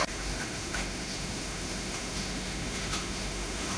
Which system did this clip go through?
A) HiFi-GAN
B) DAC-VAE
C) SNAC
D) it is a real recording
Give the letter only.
B